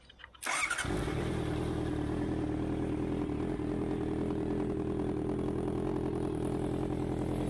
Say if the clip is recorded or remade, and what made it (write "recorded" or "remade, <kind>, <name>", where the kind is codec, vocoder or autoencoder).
recorded